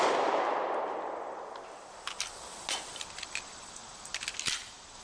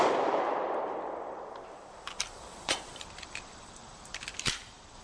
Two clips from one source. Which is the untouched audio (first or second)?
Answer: first